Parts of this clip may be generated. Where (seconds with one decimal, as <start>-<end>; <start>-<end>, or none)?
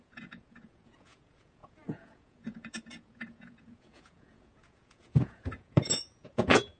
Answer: 0.0-6.8